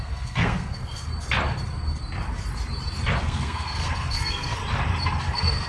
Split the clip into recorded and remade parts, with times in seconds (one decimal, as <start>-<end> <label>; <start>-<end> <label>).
0.0-1.1 remade; 1.1-3.2 recorded; 3.2-4.6 remade; 4.6-5.2 recorded; 5.2-5.7 remade